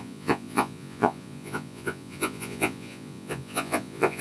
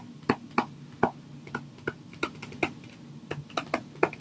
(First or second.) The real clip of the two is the second